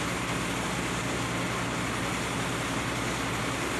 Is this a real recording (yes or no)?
yes